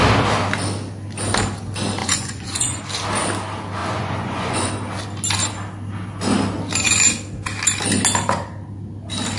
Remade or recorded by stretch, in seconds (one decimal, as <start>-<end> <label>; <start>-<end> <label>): 0.0-2.0 recorded; 2.0-2.8 remade; 2.8-3.8 recorded; 3.8-4.7 remade; 4.7-9.4 recorded